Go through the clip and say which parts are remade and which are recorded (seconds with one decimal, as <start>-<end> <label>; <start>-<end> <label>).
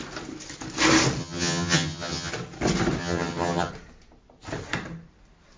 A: 0.0-1.2 recorded; 1.2-2.3 remade; 2.3-3.0 recorded; 3.0-3.7 remade; 3.7-5.6 recorded